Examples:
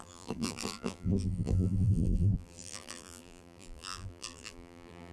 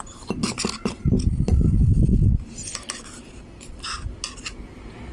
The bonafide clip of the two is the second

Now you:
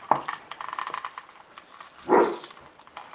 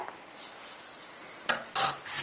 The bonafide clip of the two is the second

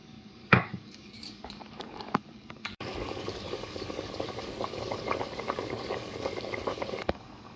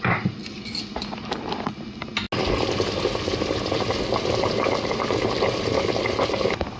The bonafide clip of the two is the second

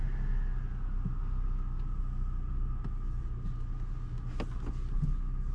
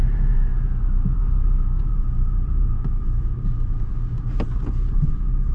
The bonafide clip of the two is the first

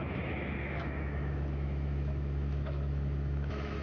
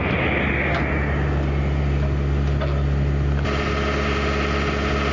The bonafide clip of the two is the second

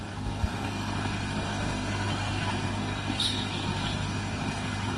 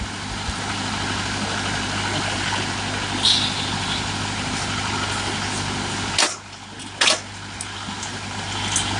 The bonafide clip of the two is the second